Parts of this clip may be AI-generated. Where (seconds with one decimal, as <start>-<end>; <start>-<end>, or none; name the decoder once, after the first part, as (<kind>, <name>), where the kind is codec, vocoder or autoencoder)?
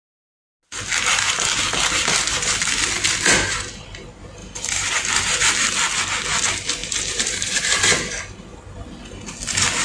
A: 4.4-4.9 (vocoder, BigVGAN v2); 6.8-7.8